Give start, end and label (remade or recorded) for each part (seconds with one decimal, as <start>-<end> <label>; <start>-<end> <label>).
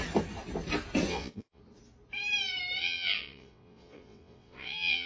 0.0-1.1 recorded; 1.1-1.6 remade; 1.6-2.8 recorded; 2.8-5.1 remade